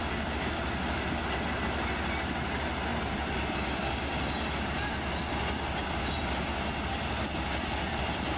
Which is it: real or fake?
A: real